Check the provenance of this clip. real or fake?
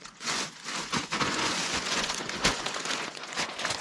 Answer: fake